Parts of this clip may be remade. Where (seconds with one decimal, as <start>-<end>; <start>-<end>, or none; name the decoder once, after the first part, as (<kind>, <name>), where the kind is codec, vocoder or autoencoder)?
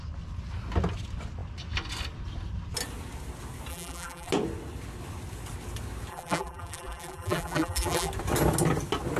3.7-4.3 (vocoder, BigVGAN v2); 6.1-8.1